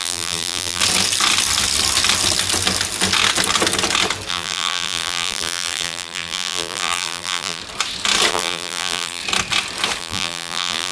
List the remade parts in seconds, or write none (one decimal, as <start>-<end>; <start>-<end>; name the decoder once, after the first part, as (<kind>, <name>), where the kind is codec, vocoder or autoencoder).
0.0-0.8 (vocoder, BigVGAN v2); 4.3-7.6; 8.3-9.2; 10.0-10.9